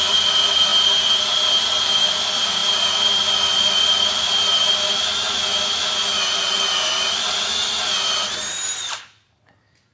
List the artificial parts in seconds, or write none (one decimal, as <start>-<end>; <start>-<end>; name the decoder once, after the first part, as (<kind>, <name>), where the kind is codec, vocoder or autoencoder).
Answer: none